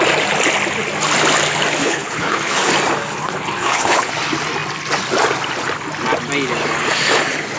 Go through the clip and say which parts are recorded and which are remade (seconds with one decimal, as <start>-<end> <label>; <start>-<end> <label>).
0.0-1.8 recorded; 1.8-2.7 remade; 2.7-3.6 recorded; 3.6-4.1 remade; 4.1-7.6 recorded